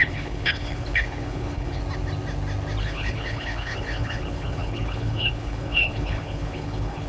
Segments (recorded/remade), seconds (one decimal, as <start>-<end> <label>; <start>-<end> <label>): 0.0-1.8 remade; 1.8-2.8 recorded; 2.8-7.1 remade